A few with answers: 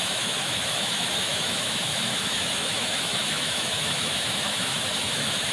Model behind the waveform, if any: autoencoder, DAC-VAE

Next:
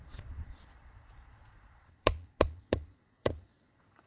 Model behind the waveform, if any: vocoder, Vocos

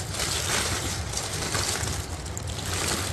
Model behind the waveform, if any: vocoder, BigVGAN v2